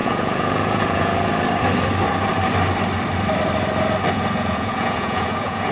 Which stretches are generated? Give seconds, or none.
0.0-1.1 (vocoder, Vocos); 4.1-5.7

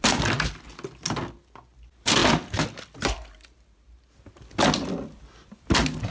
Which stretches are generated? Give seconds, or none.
none

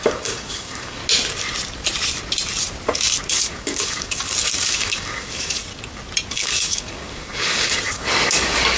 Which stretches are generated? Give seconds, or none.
0.0-1.0 (codec, DAC); 3.3-5.6; 6.3-8.8

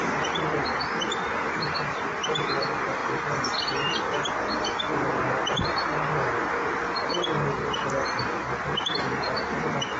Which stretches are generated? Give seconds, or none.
none

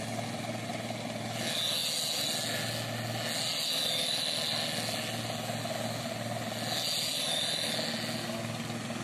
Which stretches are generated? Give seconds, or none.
none

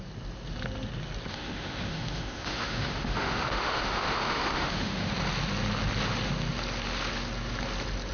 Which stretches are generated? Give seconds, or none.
1.3-5.1 (autoencoder, DAC-VAE)

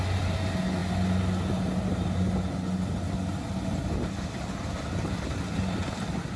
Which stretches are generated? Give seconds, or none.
none